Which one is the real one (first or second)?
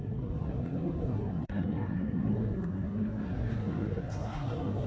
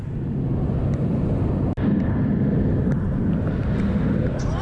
second